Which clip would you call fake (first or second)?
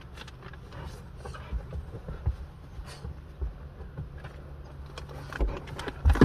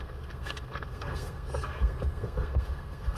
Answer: second